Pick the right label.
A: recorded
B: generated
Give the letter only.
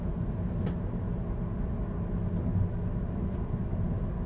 A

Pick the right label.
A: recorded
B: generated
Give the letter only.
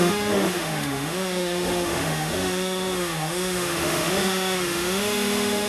B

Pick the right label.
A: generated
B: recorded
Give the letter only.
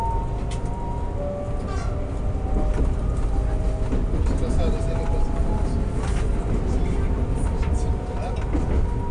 B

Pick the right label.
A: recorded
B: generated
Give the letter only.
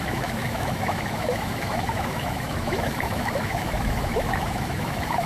B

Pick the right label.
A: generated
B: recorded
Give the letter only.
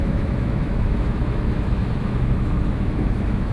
A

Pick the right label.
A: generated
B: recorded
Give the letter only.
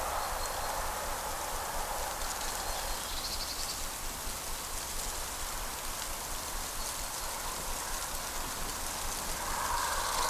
B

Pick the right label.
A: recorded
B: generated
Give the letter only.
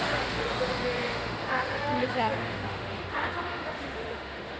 B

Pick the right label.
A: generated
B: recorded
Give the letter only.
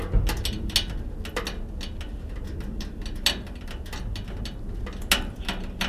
B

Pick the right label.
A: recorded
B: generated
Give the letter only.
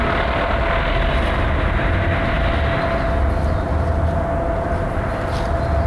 A